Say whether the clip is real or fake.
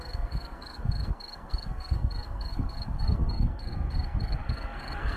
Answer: fake